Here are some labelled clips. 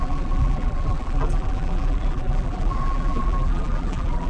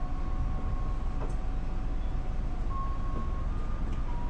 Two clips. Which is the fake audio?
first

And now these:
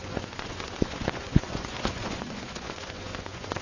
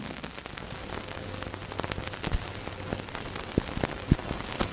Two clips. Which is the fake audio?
first